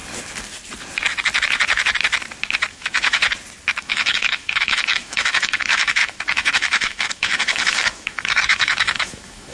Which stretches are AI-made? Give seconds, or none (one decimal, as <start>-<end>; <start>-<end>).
2.7-3.2; 3.8-9.5